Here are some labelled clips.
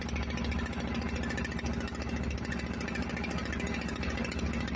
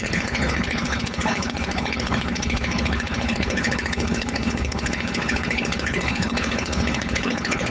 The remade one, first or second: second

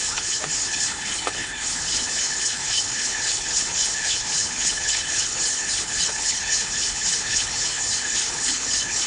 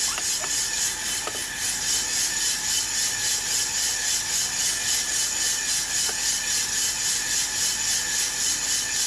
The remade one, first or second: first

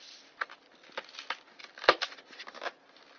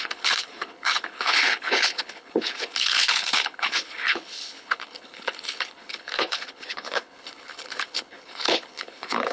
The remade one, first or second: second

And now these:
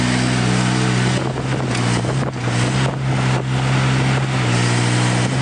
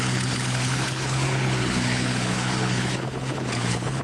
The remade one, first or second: second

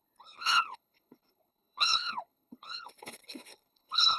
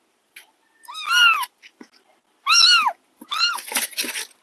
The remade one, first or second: first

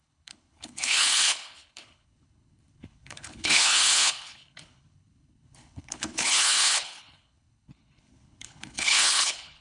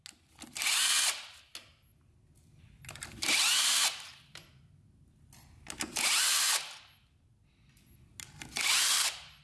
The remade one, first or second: first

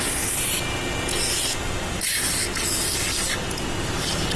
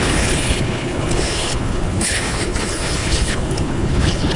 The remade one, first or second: second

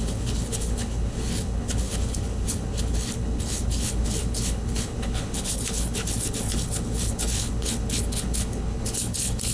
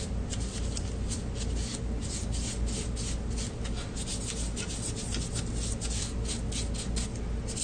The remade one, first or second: first